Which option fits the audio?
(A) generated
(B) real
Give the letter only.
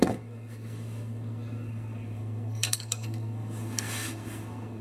A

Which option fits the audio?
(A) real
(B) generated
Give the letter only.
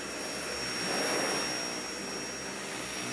A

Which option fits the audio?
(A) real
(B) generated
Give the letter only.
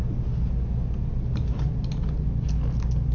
A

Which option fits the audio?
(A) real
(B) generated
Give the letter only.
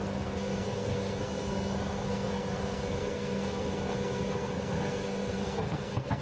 B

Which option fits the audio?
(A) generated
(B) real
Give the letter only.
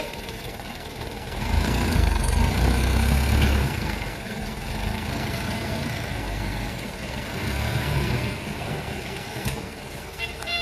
A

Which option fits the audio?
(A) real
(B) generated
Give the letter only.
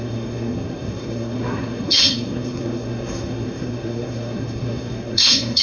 B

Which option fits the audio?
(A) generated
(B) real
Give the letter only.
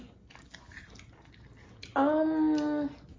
B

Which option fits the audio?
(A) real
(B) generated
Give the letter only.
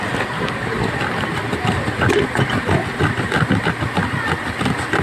A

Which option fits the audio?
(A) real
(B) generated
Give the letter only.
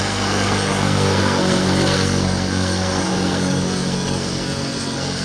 B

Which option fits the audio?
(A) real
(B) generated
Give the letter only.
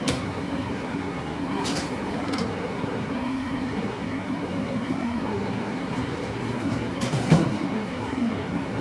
B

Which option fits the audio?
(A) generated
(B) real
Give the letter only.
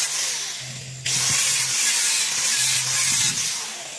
B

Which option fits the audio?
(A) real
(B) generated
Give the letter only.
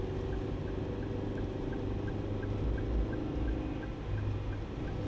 A